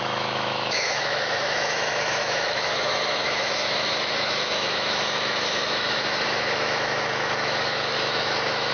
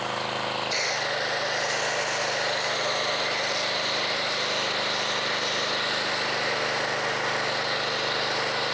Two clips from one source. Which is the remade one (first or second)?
first